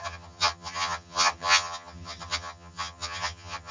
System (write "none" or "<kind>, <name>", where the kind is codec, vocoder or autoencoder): vocoder, HiFi-GAN